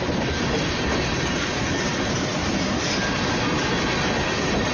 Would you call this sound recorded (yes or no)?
yes